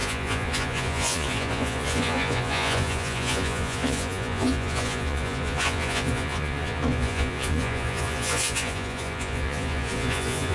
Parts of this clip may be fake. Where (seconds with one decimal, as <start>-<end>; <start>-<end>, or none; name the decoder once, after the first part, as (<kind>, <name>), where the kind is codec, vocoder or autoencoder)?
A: 0.0-10.5 (vocoder, Vocos)